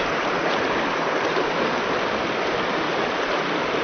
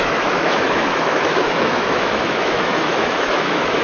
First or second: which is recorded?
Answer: first